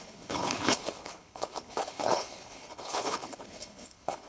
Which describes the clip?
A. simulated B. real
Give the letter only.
A